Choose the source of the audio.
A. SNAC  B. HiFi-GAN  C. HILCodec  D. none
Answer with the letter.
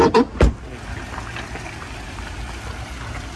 D